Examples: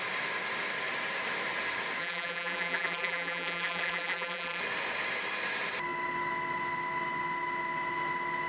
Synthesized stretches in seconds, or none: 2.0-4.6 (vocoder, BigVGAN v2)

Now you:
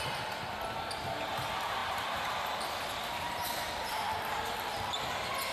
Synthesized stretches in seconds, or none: 1.8-5.1 (vocoder, BigVGAN v2)

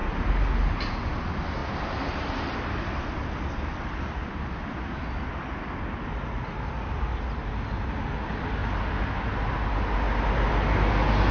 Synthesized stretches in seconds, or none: none

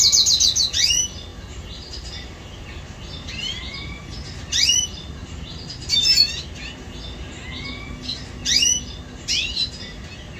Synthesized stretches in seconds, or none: 1.3-6.3 (vocoder, BigVGAN v2)